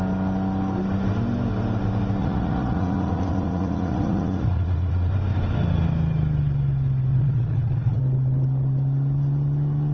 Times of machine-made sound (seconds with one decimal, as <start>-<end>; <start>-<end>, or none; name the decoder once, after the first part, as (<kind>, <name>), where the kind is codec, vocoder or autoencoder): 2.2-5.1 (vocoder, Vocos); 7.1-8.0